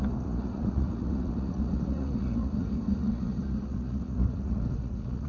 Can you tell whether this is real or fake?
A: fake